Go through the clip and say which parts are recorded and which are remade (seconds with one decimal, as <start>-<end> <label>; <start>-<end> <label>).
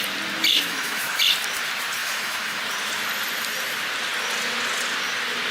0.0-0.5 recorded; 0.5-1.2 remade; 1.2-2.0 recorded; 2.0-2.6 remade; 2.6-5.5 recorded